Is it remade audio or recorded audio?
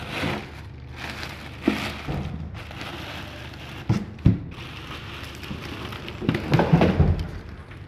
recorded